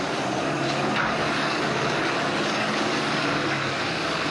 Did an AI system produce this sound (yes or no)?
yes